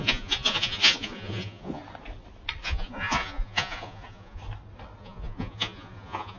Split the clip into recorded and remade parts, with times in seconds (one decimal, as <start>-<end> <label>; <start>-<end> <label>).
0.0-1.8 remade; 1.8-2.6 recorded; 2.6-4.4 remade; 4.4-5.0 recorded; 5.0-6.4 remade